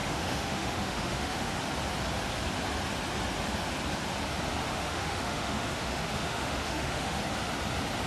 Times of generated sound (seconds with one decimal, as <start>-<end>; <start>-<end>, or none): 0.0-1.6; 4.6-7.2